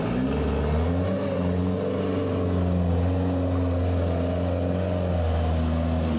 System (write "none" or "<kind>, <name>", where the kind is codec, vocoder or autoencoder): none